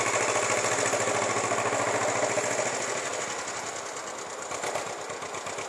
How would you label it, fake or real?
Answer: real